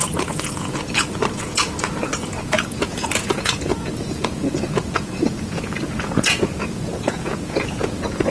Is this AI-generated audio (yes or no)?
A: yes